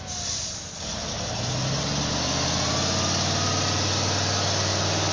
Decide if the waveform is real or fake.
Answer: real